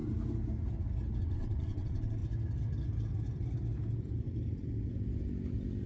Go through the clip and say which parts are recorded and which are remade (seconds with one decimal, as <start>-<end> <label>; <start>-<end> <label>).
0.0-1.2 recorded; 1.2-2.2 remade; 2.2-5.9 recorded